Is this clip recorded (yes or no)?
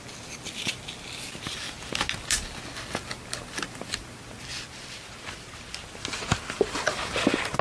yes